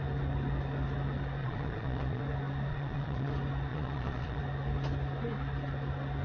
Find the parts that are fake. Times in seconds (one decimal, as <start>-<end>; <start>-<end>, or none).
1.4-2.2; 2.7-3.3; 3.7-4.4